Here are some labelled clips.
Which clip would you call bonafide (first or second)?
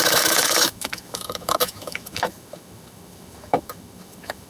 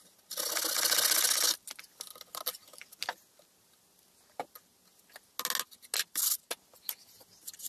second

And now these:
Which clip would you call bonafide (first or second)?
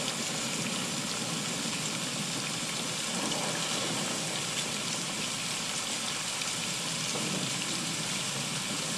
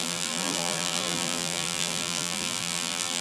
first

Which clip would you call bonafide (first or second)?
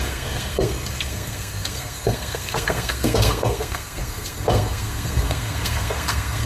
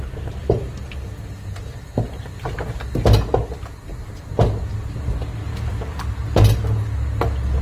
second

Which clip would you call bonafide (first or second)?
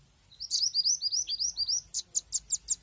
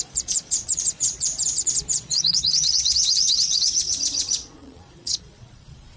first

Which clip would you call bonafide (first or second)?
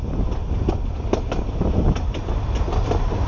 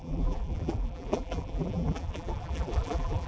first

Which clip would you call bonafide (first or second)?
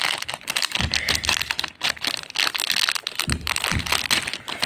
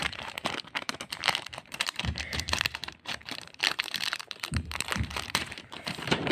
first